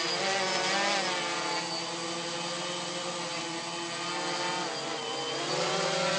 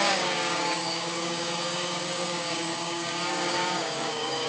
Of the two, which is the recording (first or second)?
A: first